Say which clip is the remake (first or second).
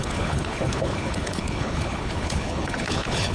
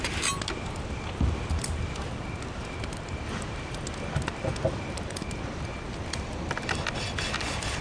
first